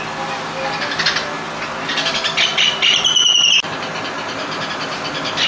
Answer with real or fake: real